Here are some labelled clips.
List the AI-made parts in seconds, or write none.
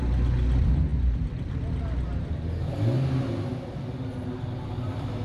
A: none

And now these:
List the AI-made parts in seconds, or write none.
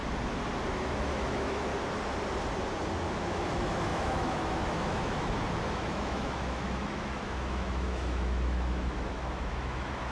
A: 0.7-1.7 (autoencoder, DAC-VAE); 3.1-10.1